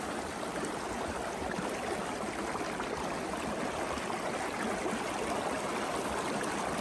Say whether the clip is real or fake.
real